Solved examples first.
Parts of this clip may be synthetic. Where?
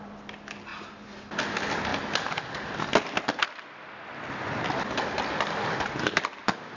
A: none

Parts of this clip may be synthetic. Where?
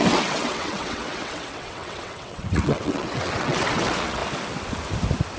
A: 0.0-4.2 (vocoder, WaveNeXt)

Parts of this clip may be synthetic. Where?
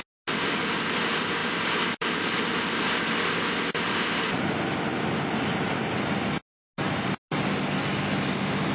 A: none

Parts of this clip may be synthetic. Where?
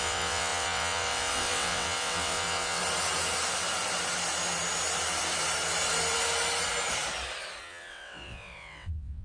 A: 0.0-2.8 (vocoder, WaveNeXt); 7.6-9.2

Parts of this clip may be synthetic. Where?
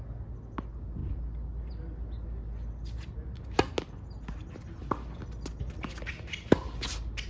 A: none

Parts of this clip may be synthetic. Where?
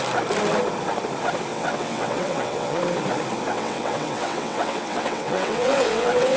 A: 1.5-2.8 (vocoder, WaveNeXt); 3.5-6.4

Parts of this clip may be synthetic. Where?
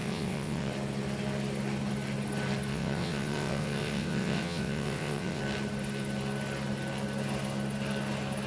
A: 0.0-0.7 (vocoder, WaveNeXt); 2.7-5.4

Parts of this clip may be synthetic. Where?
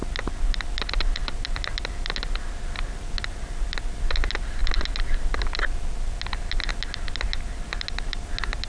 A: none